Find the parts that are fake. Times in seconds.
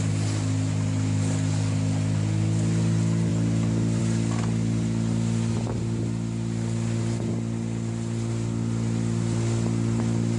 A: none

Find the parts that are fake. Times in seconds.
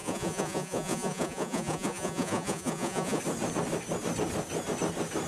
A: 0.0-3.2 (vocoder, Vocos)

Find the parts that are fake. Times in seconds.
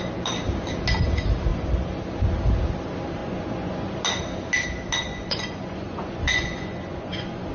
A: 3.2-3.9 (vocoder, Vocos); 5.1-7.5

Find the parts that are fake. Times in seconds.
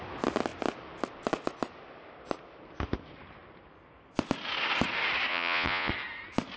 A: 5.3-5.9 (vocoder, Vocos)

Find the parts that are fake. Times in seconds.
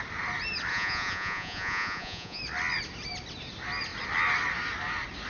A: 0.7-2.4 (vocoder, Vocos)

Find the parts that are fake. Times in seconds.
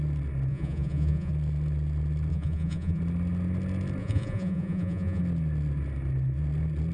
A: 0.5-1.3 (vocoder, Vocos); 2.3-3.0; 4.0-5.2